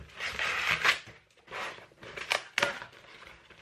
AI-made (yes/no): no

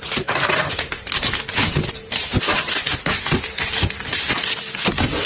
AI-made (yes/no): yes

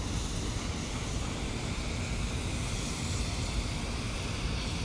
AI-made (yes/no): no